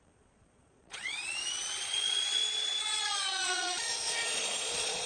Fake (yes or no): yes